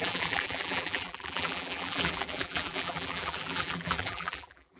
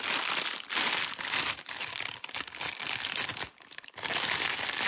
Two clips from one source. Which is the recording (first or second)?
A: second